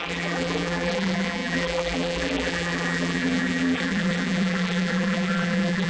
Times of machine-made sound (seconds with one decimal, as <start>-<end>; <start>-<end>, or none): 0.0-5.9